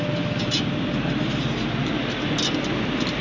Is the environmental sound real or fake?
real